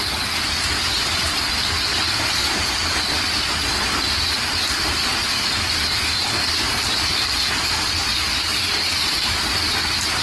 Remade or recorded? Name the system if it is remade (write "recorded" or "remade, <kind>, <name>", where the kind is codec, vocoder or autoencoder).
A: recorded